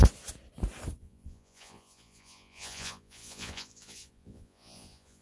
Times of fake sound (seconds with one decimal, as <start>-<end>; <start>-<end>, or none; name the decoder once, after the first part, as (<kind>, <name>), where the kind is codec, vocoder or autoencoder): 1.0-5.2 (vocoder, Vocos)